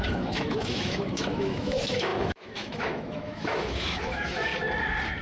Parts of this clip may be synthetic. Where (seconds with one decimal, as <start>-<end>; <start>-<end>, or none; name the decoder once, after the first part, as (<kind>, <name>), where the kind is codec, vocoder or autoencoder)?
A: 0.0-4.5 (autoencoder, DAC-VAE)